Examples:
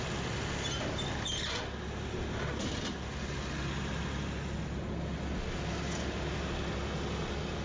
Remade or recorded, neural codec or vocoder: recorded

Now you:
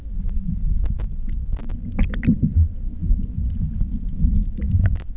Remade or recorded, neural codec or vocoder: recorded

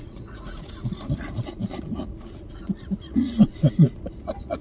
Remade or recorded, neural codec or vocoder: remade, vocoder, Vocos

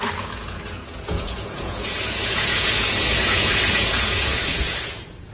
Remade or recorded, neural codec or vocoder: remade, vocoder, Vocos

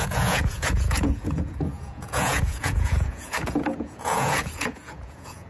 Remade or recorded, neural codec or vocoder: remade, vocoder, Vocos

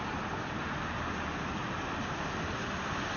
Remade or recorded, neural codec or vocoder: recorded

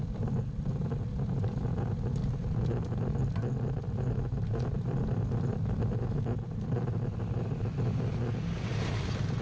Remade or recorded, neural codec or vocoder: recorded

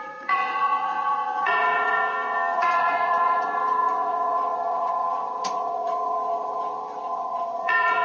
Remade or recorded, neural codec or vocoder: remade, vocoder, Vocos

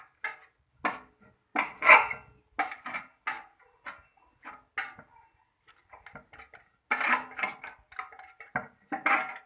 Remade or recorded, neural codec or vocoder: recorded